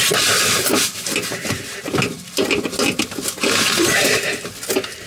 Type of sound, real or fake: real